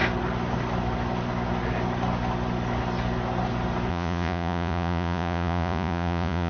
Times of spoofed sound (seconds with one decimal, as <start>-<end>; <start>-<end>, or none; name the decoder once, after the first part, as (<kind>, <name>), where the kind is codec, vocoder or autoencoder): 3.9-6.5 (vocoder, Vocos)